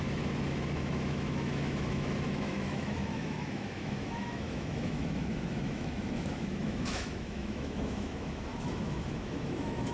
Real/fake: fake